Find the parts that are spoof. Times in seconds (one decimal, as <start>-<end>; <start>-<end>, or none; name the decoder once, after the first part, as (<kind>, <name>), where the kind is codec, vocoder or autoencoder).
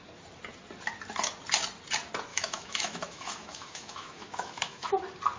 2.3-4.9 (autoencoder, DAC-VAE)